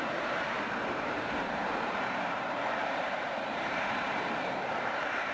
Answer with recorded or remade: remade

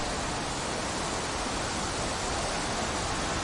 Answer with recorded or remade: recorded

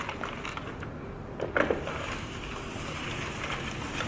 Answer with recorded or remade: recorded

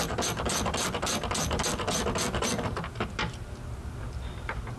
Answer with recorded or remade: recorded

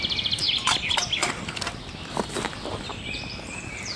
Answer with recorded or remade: recorded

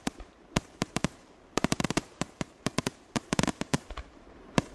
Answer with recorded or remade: remade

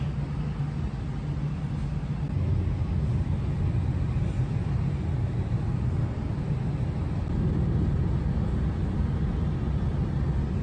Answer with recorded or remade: recorded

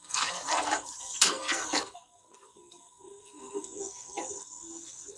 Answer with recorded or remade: remade